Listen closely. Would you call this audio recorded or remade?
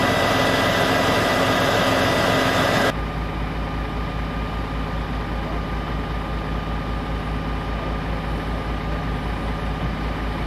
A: recorded